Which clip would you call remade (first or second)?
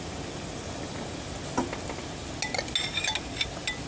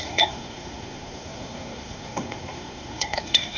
second